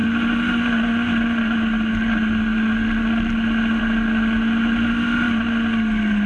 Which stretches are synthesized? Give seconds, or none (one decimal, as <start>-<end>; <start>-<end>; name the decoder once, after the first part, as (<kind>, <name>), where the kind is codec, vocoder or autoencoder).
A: none